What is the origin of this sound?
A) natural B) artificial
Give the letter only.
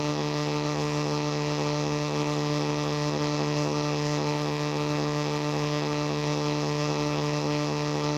B